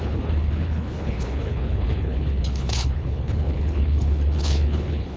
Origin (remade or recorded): remade